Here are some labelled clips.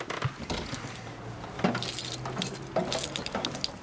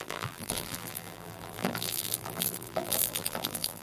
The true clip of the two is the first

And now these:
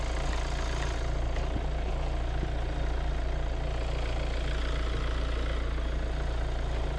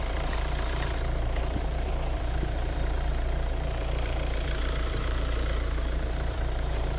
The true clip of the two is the first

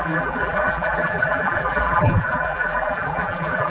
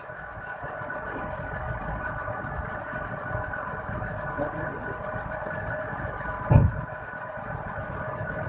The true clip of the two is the second